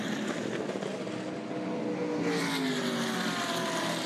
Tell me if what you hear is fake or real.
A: real